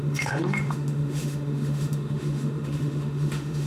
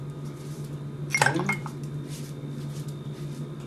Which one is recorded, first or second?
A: second